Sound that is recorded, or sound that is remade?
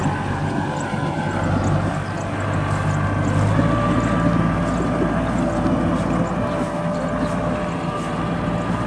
recorded